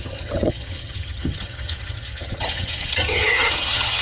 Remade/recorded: remade